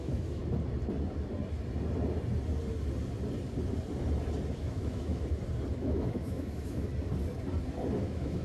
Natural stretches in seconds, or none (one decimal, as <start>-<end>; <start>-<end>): 0.4-4.6; 5.1-5.8; 6.9-8.0